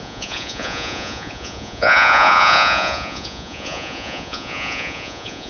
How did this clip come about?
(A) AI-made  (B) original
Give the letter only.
A